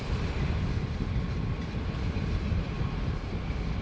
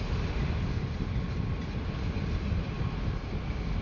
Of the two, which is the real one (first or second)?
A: second